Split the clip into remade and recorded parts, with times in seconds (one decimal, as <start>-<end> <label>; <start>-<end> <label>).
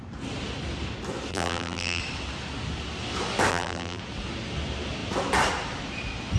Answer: 0.0-1.3 recorded; 1.3-2.0 remade; 2.0-3.5 recorded; 3.5-4.0 remade; 4.0-6.4 recorded